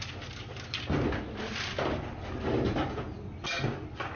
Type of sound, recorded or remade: recorded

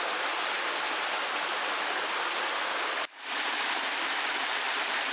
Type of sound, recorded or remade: recorded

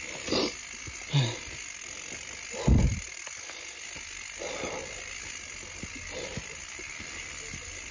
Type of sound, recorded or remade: recorded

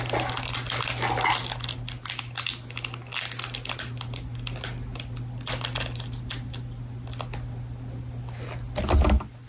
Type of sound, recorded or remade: recorded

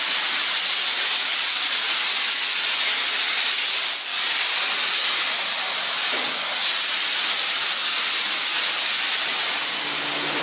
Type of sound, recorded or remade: recorded